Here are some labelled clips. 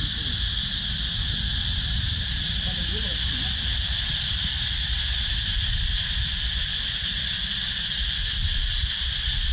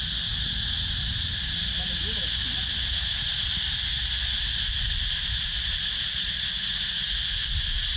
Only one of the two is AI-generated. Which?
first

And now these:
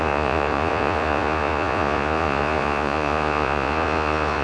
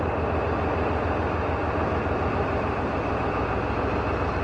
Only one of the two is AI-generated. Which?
first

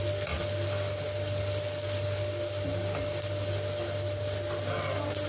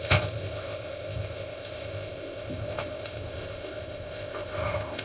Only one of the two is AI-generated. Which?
second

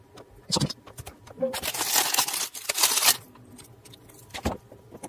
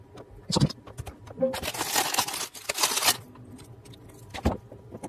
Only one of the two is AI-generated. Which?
first